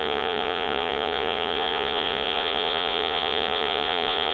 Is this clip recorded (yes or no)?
no